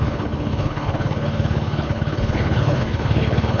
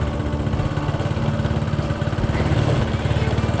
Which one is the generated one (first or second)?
first